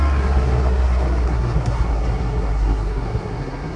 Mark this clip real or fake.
fake